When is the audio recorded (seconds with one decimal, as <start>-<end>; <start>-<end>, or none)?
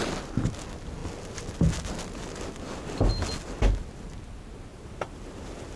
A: 0.0-4.7